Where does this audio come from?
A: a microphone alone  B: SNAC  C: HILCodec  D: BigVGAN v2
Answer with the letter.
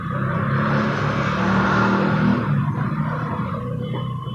A